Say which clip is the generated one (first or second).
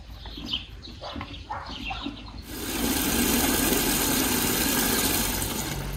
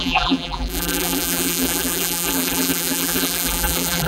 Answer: second